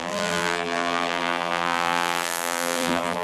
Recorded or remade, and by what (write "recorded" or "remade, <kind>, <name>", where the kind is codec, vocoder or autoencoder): remade, vocoder, BigVGAN v2